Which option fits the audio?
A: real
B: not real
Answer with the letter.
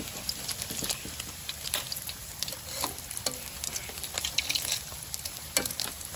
B